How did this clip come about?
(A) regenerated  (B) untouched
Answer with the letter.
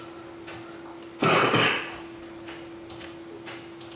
B